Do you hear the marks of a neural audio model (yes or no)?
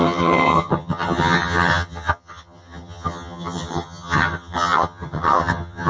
yes